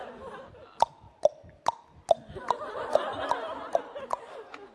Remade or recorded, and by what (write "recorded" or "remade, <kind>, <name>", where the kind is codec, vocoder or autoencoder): recorded